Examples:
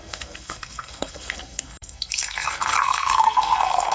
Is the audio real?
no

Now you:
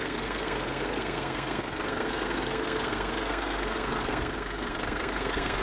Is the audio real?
no